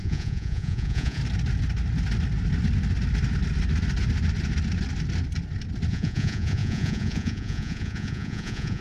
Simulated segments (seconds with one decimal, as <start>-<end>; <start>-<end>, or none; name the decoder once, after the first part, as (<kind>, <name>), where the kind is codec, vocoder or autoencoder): 0.0-1.2 (vocoder, Vocos); 5.9-8.8